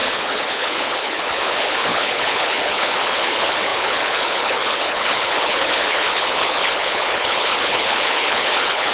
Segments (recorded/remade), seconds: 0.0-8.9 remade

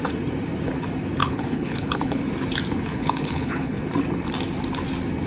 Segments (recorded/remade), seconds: 0.0-1.2 recorded; 1.2-2.2 remade; 2.2-2.9 recorded; 2.9-3.8 remade; 3.8-5.3 recorded

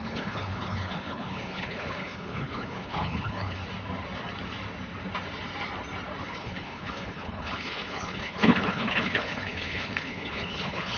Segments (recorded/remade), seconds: 0.0-3.6 remade; 3.6-6.3 recorded; 6.3-11.0 remade